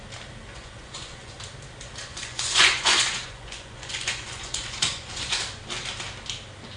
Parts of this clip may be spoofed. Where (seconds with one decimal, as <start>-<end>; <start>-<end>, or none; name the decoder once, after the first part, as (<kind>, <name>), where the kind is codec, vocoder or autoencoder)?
0.5-1.4 (vocoder, Vocos); 2.1-5.4